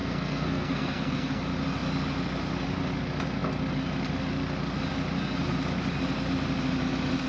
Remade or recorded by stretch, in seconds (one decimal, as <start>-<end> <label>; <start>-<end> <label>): 0.0-1.4 remade; 1.4-7.3 recorded